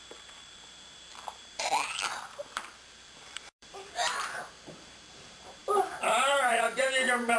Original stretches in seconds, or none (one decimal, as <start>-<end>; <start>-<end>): none